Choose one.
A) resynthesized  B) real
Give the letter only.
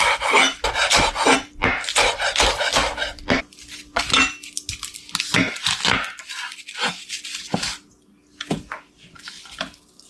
B